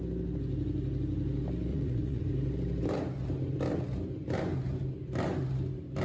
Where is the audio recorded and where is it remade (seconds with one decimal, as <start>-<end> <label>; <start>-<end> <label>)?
0.0-1.7 recorded; 1.7-2.2 remade; 2.2-6.0 recorded

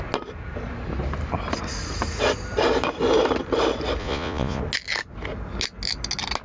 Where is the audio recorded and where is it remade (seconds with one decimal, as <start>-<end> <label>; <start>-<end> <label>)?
0.0-4.0 recorded; 4.0-4.6 remade; 4.6-6.4 recorded

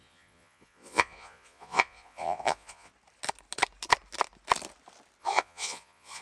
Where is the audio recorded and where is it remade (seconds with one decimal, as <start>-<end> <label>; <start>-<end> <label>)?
0.0-2.9 remade; 2.9-5.2 recorded; 5.2-6.2 remade

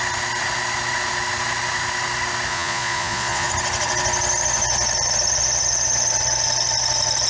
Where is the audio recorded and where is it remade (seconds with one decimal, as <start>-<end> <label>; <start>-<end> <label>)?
0.0-2.5 recorded; 2.5-3.5 remade; 3.5-7.3 recorded

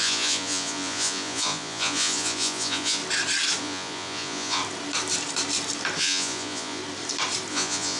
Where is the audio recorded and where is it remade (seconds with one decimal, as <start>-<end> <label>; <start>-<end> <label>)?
0.0-3.0 remade; 3.0-3.6 recorded; 3.6-4.6 remade; 4.6-6.0 recorded; 6.0-6.8 remade; 6.8-7.5 recorded; 7.5-8.0 remade

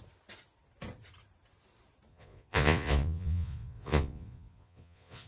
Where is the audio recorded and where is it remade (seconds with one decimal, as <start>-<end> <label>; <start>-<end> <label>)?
0.0-2.1 recorded; 2.1-5.3 remade